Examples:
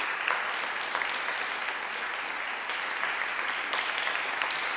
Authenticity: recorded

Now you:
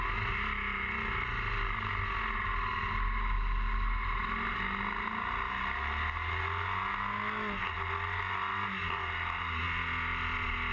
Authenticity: recorded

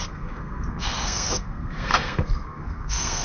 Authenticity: remade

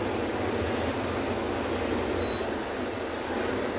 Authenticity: recorded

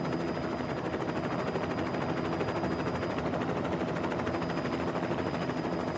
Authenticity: recorded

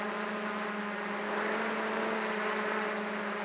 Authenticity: recorded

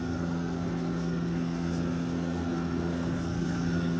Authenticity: remade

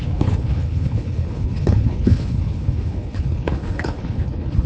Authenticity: remade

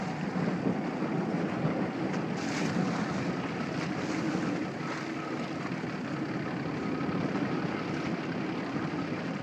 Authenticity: recorded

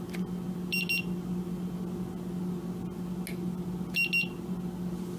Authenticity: recorded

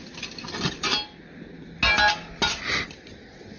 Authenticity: recorded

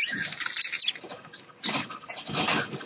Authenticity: recorded